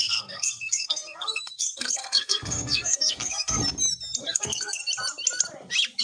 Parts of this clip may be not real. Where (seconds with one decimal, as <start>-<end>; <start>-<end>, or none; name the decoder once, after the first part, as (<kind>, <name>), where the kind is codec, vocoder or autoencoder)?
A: 0.0-3.6 (codec, SNAC); 4.2-4.8

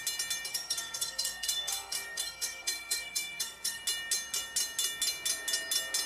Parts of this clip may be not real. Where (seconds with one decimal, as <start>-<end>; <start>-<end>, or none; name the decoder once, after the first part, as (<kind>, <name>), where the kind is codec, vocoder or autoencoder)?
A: 0.5-3.8 (codec, SNAC)